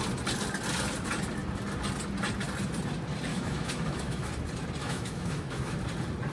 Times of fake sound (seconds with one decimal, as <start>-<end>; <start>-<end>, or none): 3.3-4.3; 4.8-5.8